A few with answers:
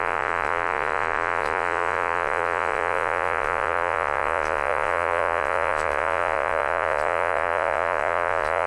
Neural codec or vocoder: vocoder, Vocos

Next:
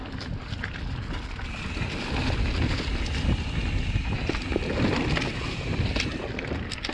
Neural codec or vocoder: none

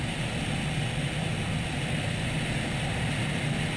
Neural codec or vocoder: none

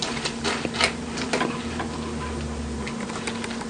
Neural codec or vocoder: none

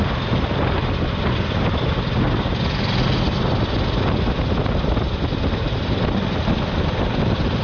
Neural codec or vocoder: none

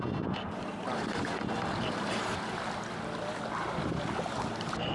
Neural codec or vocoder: none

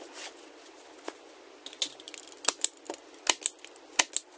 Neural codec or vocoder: none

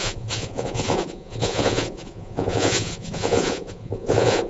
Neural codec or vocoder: vocoder, Vocos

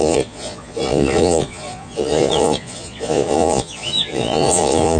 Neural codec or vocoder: vocoder, Vocos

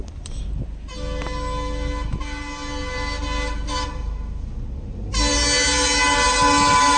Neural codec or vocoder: none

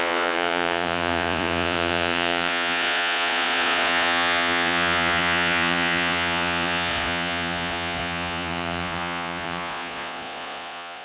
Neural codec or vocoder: vocoder, Vocos